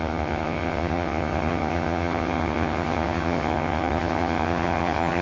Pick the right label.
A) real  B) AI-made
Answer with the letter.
B